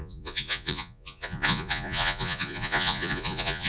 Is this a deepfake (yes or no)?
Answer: yes